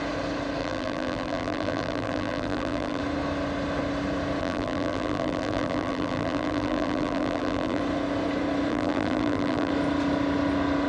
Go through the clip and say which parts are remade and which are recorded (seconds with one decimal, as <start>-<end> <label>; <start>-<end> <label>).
0.0-0.6 recorded; 0.6-3.0 remade; 3.0-4.4 recorded; 4.4-7.8 remade; 7.8-8.7 recorded; 8.7-9.7 remade; 9.7-10.9 recorded

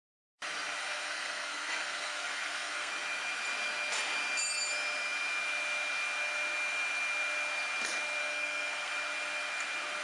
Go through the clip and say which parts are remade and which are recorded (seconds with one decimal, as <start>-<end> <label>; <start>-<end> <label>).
0.0-0.8 recorded; 0.8-2.9 remade; 2.9-8.2 recorded; 8.2-8.9 remade; 8.9-10.0 recorded